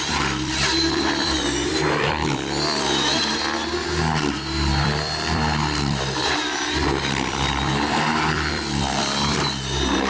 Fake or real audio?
fake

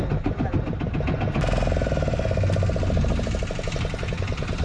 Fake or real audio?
real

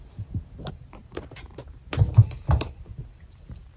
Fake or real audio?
fake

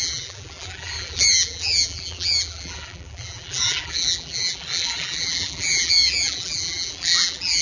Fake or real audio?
fake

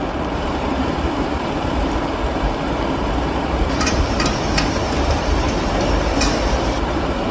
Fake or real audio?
fake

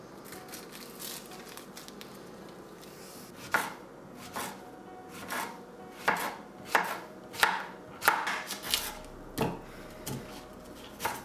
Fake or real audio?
real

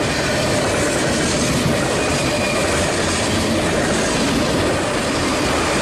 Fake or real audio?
real